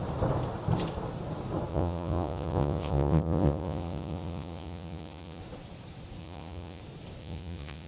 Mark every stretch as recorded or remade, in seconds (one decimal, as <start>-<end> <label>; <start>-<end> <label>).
0.0-1.7 recorded; 1.7-5.4 remade; 5.4-6.2 recorded; 6.2-6.8 remade; 6.8-7.2 recorded; 7.2-7.9 remade